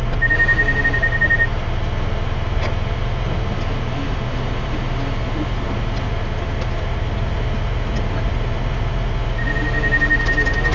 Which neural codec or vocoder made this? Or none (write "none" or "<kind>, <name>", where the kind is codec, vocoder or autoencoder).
none